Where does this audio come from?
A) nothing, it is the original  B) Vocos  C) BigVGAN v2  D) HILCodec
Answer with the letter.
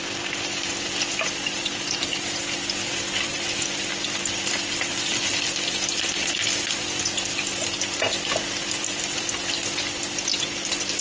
A